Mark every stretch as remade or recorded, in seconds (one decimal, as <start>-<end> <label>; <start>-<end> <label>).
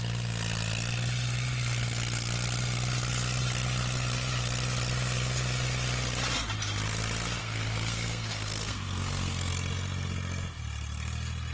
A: 0.0-7.4 recorded; 7.4-9.5 remade; 9.5-11.5 recorded